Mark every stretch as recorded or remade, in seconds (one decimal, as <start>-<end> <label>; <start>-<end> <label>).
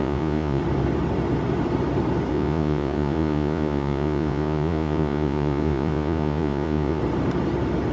0.0-0.6 remade; 0.6-2.3 recorded; 2.3-7.0 remade; 7.0-7.9 recorded